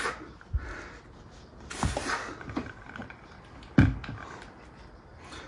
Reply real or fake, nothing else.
real